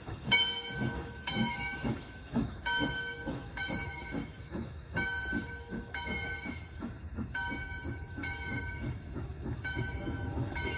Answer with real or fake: fake